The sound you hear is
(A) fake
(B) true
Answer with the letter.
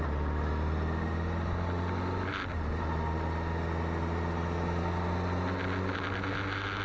B